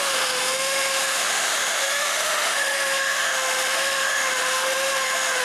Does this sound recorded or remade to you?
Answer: remade